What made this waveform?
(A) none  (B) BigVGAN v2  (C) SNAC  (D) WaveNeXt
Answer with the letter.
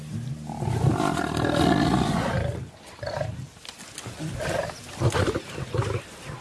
A